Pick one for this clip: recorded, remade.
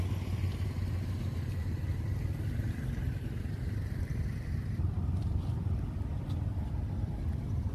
remade